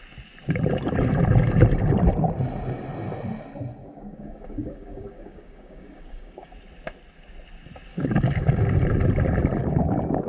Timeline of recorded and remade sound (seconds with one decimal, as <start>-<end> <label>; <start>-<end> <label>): 0.0-3.8 recorded; 3.8-6.5 remade; 6.5-7.9 recorded; 7.9-8.7 remade; 8.7-9.6 recorded; 9.6-10.3 remade

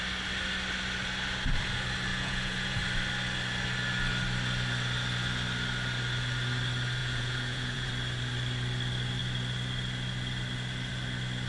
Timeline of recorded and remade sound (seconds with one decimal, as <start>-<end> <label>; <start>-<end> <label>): 0.0-2.1 recorded; 2.1-2.8 remade; 2.8-7.0 recorded; 7.0-7.9 remade; 7.9-11.5 recorded

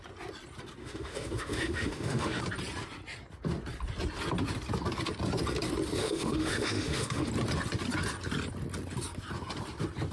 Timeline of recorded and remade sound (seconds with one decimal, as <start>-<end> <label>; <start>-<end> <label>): 0.0-0.8 recorded; 0.8-2.4 remade; 2.4-6.0 recorded; 6.0-7.3 remade; 7.3-10.1 recorded

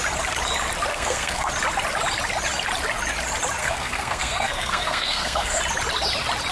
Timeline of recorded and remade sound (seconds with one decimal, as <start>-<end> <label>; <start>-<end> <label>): 0.0-0.9 recorded; 0.9-1.5 remade; 1.5-3.6 recorded; 3.6-5.6 remade; 5.6-6.5 recorded